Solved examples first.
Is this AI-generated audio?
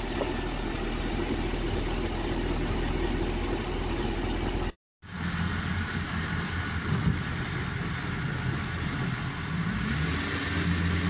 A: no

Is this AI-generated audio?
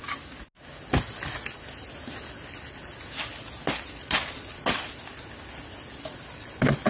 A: no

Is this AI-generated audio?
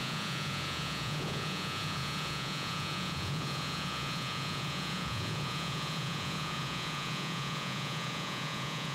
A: yes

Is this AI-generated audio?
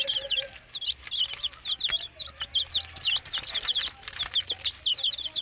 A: no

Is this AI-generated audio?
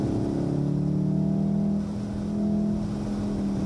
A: no